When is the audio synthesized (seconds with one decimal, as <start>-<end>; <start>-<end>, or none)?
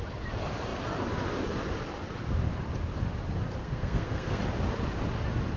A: 3.6-4.4